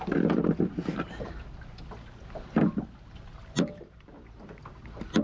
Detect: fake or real real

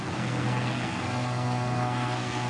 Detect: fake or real fake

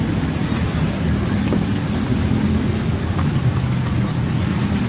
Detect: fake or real real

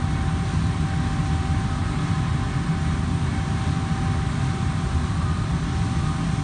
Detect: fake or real real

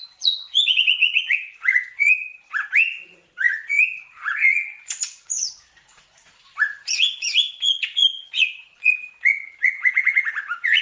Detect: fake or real fake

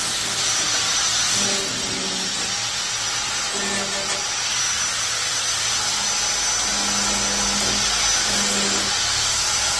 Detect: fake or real real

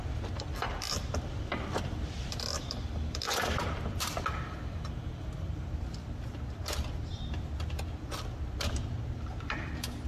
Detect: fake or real fake